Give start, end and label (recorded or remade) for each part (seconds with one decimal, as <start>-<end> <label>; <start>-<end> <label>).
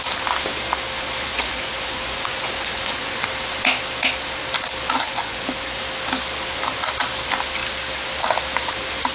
0.0-1.3 recorded; 1.3-3.3 remade; 3.3-5.0 recorded; 5.0-5.8 remade; 5.8-9.1 recorded